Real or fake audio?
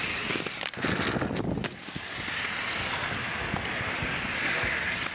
real